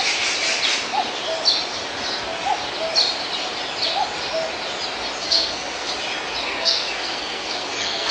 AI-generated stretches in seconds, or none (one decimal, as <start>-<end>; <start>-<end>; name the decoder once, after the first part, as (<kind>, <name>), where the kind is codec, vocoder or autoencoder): 5.2-5.9 (codec, SNAC); 6.4-8.1